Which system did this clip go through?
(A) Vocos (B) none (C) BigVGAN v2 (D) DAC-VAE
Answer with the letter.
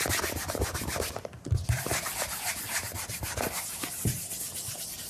B